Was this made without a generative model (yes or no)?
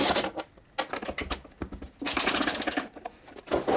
yes